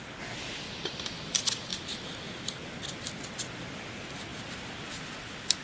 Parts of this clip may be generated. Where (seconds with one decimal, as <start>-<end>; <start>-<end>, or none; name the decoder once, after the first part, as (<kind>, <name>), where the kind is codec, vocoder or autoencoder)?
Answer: none